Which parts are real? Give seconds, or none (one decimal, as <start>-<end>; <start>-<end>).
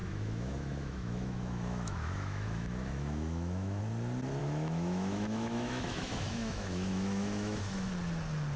3.8-4.4; 7.9-8.6